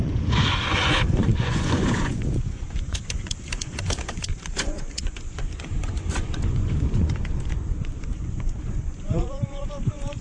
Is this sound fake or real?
fake